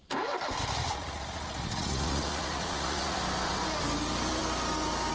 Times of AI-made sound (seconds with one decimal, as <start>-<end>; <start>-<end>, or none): 0.8-3.2

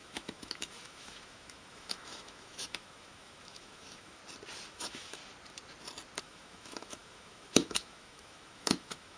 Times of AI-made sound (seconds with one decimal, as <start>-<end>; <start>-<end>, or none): 0.0-4.2; 4.7-5.2; 6.2-9.2

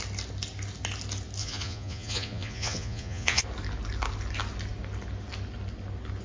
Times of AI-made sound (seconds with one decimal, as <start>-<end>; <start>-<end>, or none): 1.4-3.4

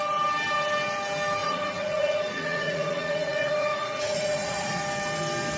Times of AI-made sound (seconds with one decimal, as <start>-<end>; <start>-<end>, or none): 1.4-4.8

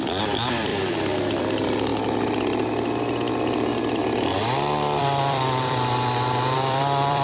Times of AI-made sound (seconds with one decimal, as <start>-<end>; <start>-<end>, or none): 0.0-1.9; 3.4-4.0; 5.0-7.2

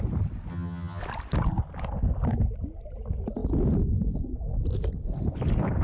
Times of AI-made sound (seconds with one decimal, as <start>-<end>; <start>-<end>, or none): 0.5-1.0

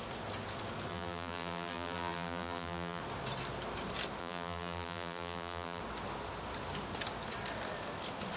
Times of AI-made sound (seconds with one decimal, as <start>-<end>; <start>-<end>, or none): 0.9-3.0; 4.2-5.8

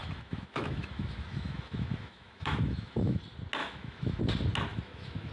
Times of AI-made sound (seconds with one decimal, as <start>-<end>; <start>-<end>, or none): 0.0-3.2; 3.6-4.2; 4.7-5.3